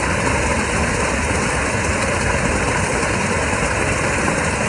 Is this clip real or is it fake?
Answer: real